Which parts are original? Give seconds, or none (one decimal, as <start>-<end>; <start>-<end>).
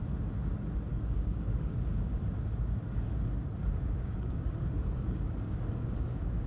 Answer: 0.0-0.9; 2.2-3.6